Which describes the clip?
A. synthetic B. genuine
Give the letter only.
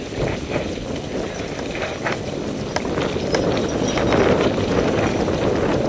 B